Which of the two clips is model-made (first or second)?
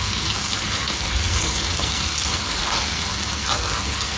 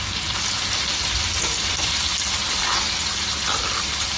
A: first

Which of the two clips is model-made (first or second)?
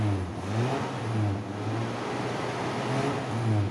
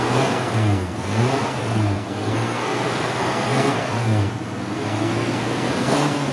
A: second